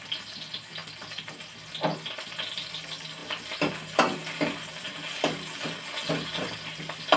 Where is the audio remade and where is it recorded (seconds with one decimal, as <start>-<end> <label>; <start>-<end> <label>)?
0.0-7.2 recorded